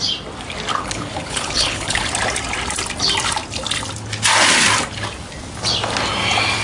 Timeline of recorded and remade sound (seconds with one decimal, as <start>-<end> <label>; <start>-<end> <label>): 0.0-0.7 recorded; 0.7-2.0 remade; 2.0-6.6 recorded